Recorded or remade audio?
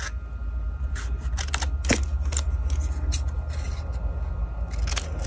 recorded